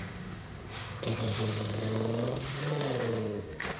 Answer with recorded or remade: remade